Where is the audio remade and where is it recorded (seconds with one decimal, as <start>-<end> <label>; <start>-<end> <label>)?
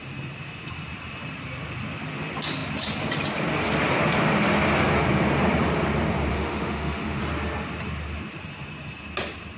0.0-6.3 recorded; 6.3-7.2 remade; 7.2-9.6 recorded